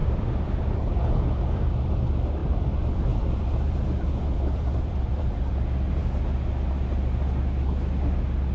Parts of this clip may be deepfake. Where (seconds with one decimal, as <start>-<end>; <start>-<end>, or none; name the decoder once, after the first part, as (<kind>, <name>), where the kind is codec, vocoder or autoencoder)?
0.0-2.0 (vocoder, BigVGAN v2); 2.4-5.5